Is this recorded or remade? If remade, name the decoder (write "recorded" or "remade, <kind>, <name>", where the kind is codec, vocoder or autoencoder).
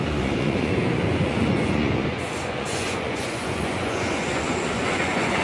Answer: remade, vocoder, Vocos